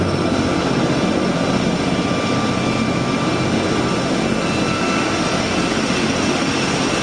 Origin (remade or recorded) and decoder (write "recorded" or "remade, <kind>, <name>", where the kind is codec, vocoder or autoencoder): recorded